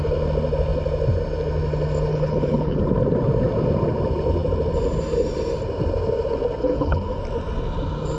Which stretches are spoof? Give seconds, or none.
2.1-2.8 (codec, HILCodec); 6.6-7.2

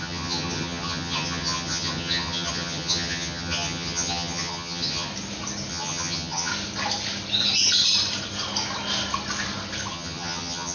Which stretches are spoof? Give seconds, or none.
0.0-5.1 (vocoder, HiFi-GAN); 5.7-6.5; 9.9-10.7

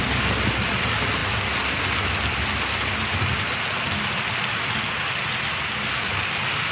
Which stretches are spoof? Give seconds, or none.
none

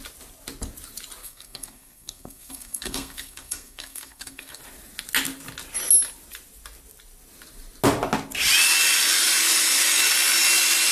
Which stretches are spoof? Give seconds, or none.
1.2-4.6 (codec, SNAC)

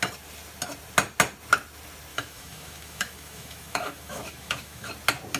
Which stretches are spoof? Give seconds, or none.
2.1-4.9 (autoencoder, DAC-VAE)

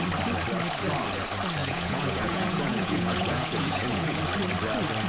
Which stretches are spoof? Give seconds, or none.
1.6-4.2 (vocoder, Vocos)

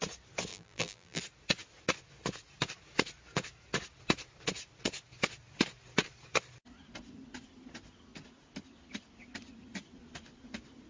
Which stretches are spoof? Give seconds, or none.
0.5-1.2 (vocoder, BigVGAN v2)

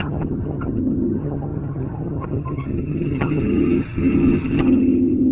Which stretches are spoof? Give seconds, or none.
0.0-5.3 (vocoder, HiFi-GAN)